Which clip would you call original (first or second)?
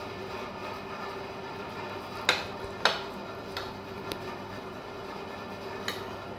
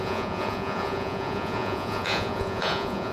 first